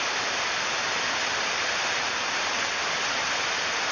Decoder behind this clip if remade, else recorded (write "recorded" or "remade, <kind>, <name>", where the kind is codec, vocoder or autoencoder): recorded